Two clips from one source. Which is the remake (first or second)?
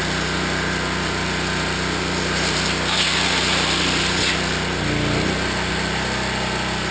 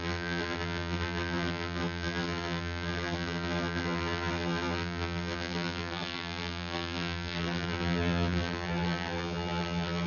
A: second